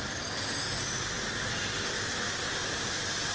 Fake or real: real